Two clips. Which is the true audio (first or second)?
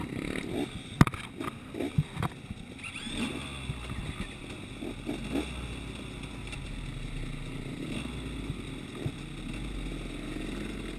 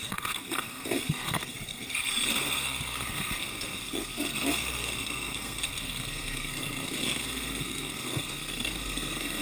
first